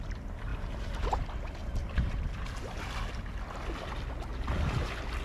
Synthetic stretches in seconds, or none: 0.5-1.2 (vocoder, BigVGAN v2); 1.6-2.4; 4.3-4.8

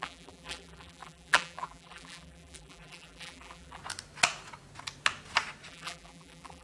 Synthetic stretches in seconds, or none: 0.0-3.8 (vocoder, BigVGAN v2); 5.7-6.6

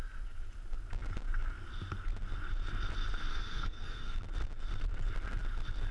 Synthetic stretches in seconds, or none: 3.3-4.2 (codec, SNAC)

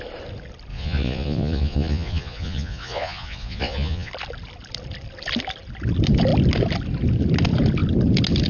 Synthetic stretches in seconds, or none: 0.7-4.1 (vocoder, Vocos)

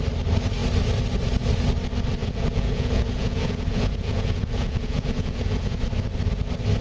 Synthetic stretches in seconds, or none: 2.2-5.8 (vocoder, Vocos)

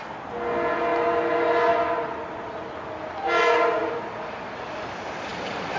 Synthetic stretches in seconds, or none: none